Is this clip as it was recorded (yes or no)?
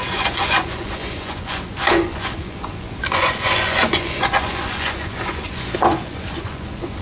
no